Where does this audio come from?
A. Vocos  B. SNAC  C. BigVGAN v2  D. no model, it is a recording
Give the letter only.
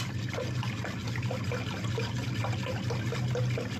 D